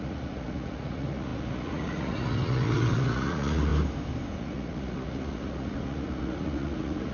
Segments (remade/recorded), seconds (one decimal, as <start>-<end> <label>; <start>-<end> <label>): 0.0-3.7 remade; 3.7-4.4 recorded; 4.4-7.1 remade